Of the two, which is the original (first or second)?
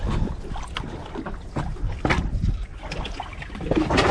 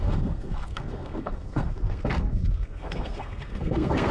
first